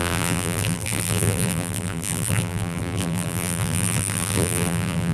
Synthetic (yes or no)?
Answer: yes